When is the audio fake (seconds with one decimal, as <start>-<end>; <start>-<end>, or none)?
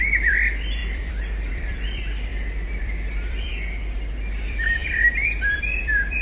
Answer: 0.0-2.3; 2.8-3.5; 4.3-6.2